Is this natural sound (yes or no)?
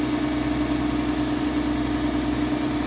yes